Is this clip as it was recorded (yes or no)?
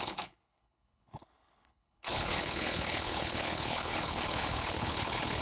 no